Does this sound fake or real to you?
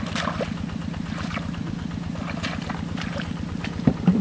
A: real